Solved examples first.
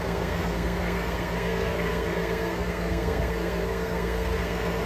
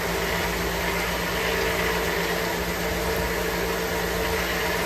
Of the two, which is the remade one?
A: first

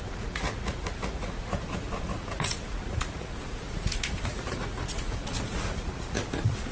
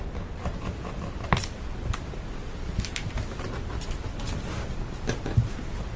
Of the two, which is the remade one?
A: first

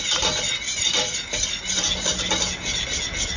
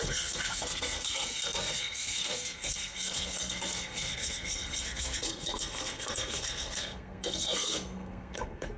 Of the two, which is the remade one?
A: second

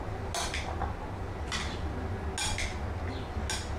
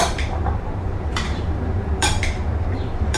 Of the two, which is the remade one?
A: second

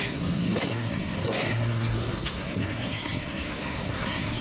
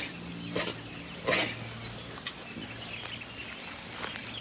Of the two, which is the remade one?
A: first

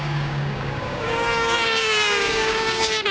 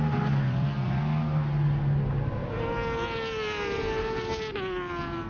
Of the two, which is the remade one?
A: first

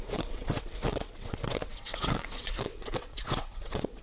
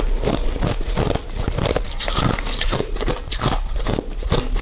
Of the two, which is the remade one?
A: first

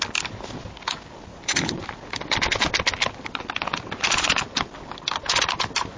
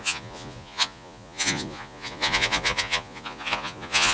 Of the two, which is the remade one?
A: second